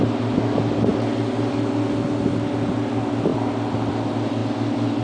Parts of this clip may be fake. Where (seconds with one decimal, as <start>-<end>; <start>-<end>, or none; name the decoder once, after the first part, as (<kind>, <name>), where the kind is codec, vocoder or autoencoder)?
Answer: none